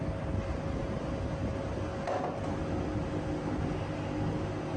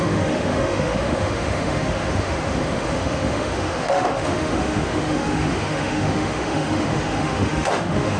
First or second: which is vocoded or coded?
second